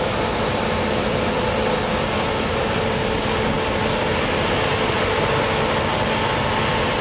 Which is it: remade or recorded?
recorded